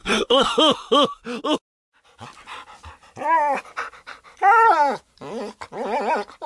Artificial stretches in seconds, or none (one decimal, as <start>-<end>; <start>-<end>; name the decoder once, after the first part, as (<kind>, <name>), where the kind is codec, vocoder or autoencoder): 0.0-0.5 (codec, SNAC)